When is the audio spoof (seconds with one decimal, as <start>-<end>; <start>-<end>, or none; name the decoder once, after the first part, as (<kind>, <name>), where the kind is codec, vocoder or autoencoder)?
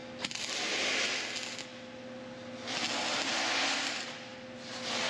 none